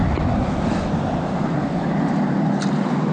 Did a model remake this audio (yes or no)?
no